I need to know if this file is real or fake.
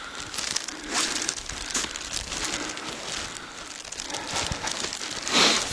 real